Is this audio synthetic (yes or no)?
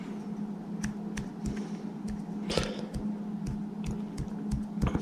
no